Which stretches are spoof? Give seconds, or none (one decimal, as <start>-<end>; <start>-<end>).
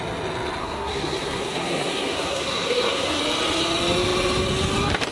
0.6-3.2